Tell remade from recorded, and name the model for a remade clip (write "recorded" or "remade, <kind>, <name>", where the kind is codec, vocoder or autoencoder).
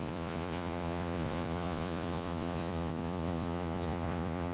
remade, vocoder, Vocos